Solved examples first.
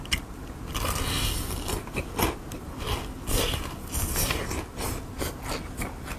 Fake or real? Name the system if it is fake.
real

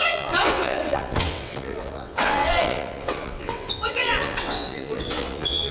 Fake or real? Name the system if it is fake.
fake, vocoder, WaveNeXt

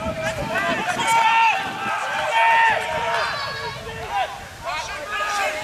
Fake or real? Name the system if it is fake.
real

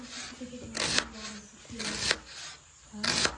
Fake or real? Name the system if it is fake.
real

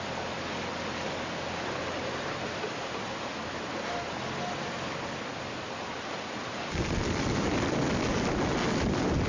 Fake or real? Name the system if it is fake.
real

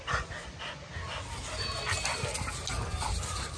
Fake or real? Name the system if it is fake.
real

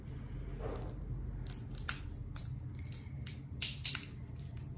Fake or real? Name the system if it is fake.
real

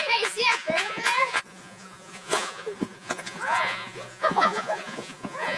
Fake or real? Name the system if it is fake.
fake, vocoder, Vocos